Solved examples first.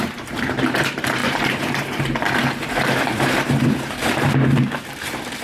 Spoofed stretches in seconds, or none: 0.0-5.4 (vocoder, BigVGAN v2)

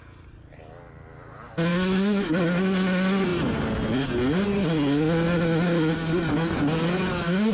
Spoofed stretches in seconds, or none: 1.7-2.3 (autoencoder, DAC-VAE)

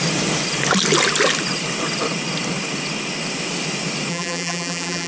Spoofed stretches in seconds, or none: 4.1-5.1 (vocoder, BigVGAN v2)